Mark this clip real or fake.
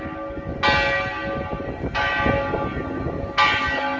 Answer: real